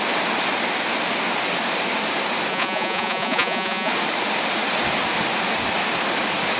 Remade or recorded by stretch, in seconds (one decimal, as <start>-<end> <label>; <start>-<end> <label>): 0.0-2.5 recorded; 2.5-3.9 remade; 3.9-6.6 recorded